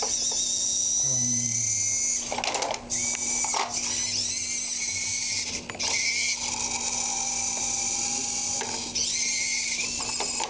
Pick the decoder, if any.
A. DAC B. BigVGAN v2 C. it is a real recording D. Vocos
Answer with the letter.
C